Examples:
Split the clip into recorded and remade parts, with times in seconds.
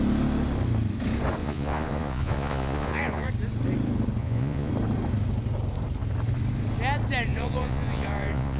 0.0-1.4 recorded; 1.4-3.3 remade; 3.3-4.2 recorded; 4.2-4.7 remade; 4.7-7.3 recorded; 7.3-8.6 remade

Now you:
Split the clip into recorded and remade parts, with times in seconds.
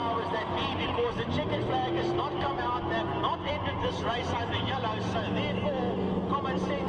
0.0-6.9 recorded